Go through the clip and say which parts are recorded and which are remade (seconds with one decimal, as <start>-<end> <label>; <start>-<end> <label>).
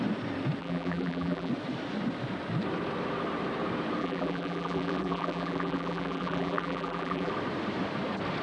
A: 0.0-0.6 recorded; 0.6-1.5 remade; 1.5-4.0 recorded; 4.0-7.3 remade; 7.3-8.4 recorded